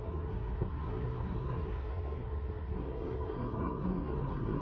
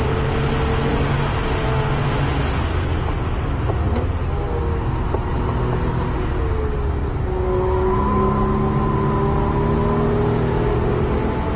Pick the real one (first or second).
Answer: second